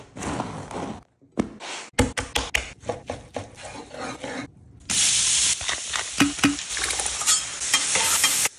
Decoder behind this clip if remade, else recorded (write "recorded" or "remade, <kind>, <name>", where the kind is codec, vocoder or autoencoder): recorded